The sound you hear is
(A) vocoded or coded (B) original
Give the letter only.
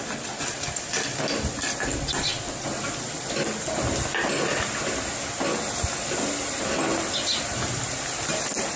B